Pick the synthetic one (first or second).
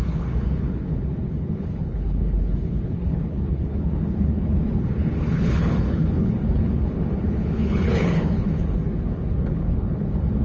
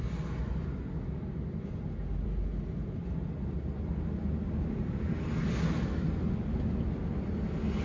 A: first